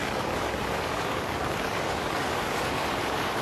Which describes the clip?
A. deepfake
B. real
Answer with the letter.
A